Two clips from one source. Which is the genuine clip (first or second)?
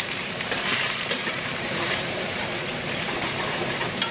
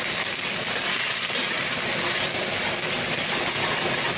second